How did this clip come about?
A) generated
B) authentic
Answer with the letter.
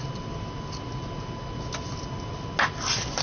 B